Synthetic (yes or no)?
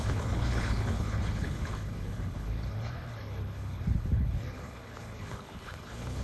yes